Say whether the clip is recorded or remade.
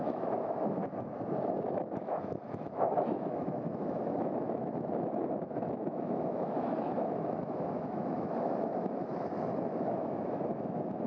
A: remade